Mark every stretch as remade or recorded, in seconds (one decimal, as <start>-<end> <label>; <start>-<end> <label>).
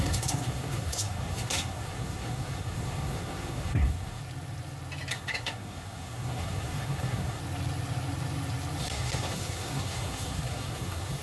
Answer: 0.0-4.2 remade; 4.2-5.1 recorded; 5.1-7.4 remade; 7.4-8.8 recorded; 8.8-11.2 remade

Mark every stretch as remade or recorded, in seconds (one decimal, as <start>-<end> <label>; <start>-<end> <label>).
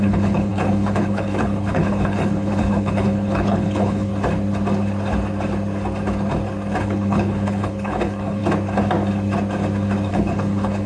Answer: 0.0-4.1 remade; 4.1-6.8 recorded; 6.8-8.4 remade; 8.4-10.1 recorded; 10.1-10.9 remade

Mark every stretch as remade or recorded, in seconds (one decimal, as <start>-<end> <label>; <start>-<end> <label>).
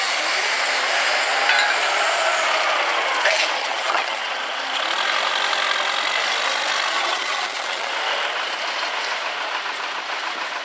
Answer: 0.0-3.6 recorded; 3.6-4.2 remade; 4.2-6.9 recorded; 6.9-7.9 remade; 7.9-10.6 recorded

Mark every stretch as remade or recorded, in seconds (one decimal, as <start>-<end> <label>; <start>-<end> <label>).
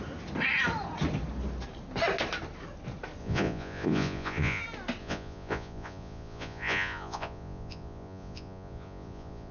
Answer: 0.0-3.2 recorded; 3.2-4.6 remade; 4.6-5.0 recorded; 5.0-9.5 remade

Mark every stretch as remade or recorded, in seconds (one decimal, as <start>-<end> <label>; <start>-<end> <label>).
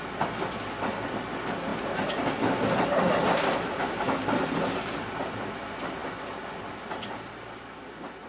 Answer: 0.0-8.3 recorded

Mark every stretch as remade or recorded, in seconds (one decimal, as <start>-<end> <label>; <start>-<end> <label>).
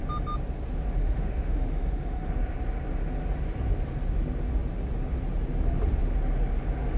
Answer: 0.0-1.0 recorded; 1.0-2.3 remade; 2.3-7.0 recorded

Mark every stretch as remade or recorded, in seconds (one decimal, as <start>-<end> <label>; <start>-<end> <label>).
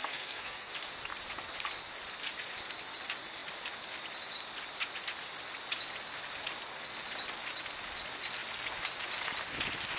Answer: 0.0-0.7 remade; 0.7-10.0 recorded